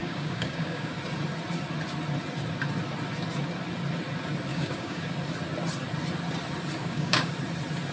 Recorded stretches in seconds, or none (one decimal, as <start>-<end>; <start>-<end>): 0.9-4.5; 5.1-6.8; 7.3-7.9